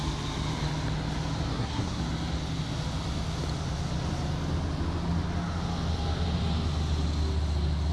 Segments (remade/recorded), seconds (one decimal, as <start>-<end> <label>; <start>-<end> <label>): 0.0-1.5 recorded; 1.5-2.0 remade; 2.0-7.9 recorded